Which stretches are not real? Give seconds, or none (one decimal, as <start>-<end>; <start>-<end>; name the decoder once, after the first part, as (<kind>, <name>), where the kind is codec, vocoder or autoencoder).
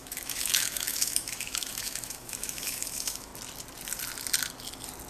0.0-3.3 (autoencoder, DAC-VAE)